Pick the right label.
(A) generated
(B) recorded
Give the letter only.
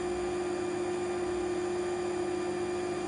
B